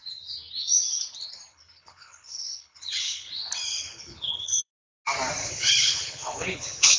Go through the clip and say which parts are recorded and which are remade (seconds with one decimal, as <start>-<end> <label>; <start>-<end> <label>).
0.0-1.5 recorded; 1.5-3.3 remade; 3.3-3.7 recorded; 3.7-4.7 remade; 4.7-5.4 recorded; 5.4-7.0 remade